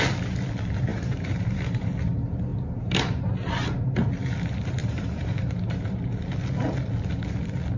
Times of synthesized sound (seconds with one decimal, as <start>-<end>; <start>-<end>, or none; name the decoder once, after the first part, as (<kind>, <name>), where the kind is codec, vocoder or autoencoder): 0.9-1.9 (vocoder, BigVGAN v2); 2.5-3.2; 4.8-6.2